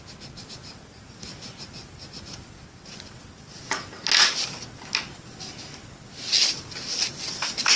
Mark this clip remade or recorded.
recorded